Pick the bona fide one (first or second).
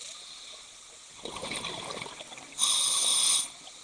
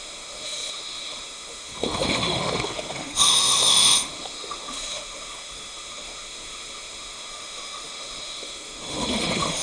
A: first